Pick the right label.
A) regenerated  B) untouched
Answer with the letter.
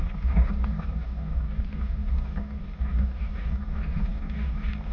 A